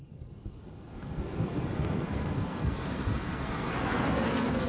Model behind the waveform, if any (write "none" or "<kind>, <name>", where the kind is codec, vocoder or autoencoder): codec, SNAC